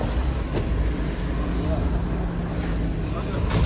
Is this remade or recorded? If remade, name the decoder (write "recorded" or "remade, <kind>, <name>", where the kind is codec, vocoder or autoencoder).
recorded